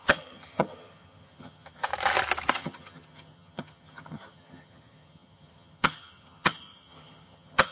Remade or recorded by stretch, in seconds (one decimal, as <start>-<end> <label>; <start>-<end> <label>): 0.0-1.9 remade; 1.9-2.5 recorded; 2.5-7.7 remade